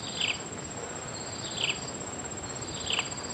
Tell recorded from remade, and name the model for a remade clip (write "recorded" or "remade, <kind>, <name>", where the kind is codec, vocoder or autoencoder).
recorded